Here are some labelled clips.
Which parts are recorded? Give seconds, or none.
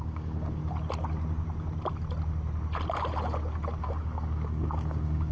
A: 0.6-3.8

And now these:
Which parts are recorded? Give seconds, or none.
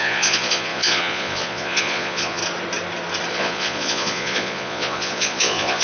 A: 2.4-3.3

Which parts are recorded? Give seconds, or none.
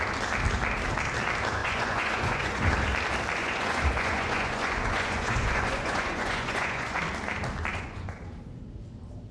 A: 0.0-1.6; 2.7-3.4; 7.0-7.7; 8.2-9.3